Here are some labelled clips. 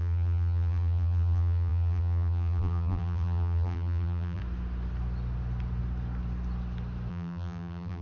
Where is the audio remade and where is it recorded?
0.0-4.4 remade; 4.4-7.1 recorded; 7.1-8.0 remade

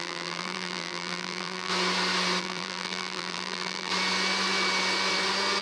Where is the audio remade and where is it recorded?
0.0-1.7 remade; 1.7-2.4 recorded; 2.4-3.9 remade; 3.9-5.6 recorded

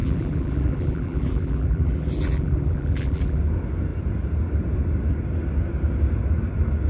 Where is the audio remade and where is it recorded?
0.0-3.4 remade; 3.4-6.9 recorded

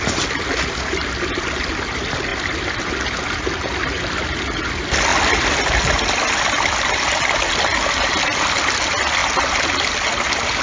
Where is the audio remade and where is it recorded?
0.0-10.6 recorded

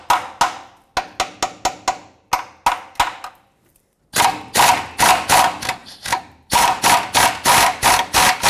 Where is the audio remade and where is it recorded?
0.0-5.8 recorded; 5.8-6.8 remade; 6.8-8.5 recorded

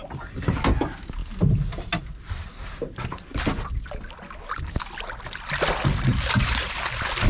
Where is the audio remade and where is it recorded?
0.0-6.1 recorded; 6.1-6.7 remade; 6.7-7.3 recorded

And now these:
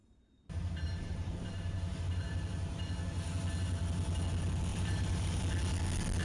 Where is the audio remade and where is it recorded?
0.0-2.0 remade; 2.0-4.7 recorded; 4.7-5.4 remade; 5.4-6.2 recorded

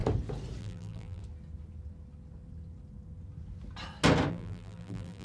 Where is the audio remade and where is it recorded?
0.0-0.6 recorded; 0.6-1.2 remade; 1.2-4.3 recorded; 4.3-5.2 remade